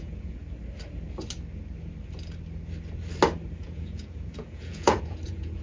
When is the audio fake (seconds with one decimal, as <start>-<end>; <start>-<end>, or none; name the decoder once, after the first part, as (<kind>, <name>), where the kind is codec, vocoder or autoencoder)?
0.0-0.4 (vocoder, Vocos); 3.6-5.6